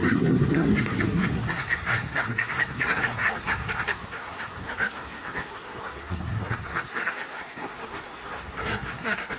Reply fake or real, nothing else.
fake